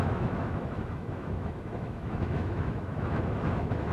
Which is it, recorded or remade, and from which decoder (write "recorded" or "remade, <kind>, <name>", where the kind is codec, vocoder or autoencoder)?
remade, autoencoder, DAC-VAE